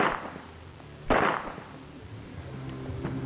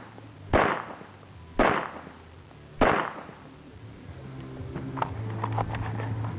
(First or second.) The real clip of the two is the second